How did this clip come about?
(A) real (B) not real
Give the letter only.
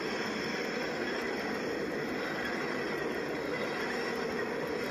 A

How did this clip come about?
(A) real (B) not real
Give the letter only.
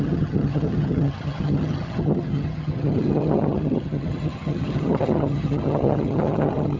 B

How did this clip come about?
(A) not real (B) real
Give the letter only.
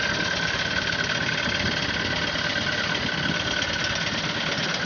B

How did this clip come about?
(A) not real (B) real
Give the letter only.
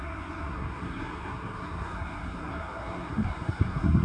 A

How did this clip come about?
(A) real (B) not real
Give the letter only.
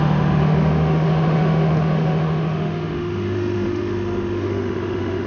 B